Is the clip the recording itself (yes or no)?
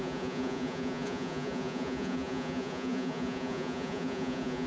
no